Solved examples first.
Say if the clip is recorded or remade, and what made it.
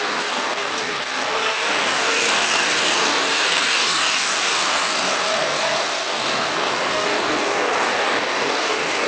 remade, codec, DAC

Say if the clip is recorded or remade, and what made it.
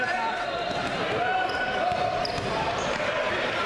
remade, vocoder, BigVGAN v2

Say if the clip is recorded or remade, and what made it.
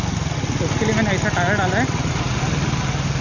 recorded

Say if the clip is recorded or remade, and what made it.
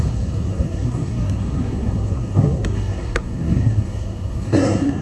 remade, codec, SNAC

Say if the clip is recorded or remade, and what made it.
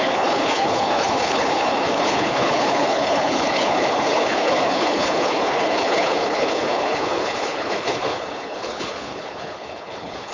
remade, codec, HILCodec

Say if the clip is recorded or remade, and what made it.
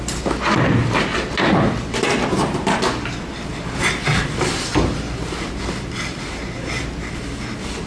recorded